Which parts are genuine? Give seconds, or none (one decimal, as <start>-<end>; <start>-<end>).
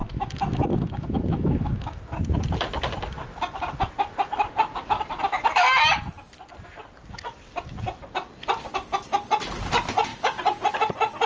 2.0-11.3